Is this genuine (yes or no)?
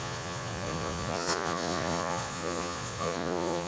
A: no